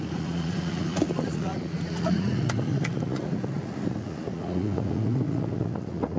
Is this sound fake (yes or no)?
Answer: yes